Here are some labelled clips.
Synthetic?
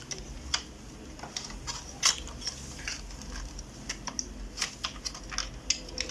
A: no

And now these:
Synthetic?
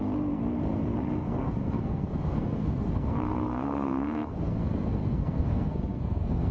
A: yes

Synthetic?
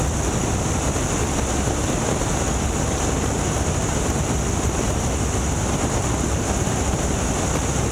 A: no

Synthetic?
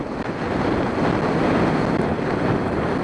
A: no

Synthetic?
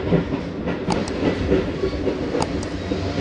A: no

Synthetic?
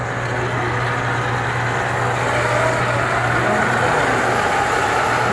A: no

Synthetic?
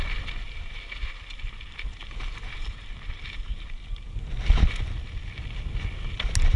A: no